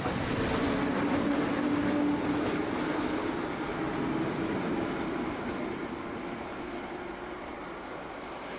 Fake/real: real